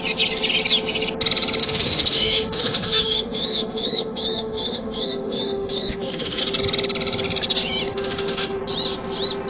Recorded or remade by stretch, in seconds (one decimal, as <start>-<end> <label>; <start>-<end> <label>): 0.0-1.6 recorded; 1.6-6.4 remade; 6.4-7.9 recorded; 7.9-8.6 remade; 8.6-9.5 recorded